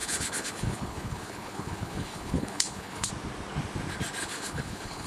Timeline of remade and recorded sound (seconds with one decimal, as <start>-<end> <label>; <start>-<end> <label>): 0.0-3.1 remade; 3.1-4.2 recorded; 4.2-5.1 remade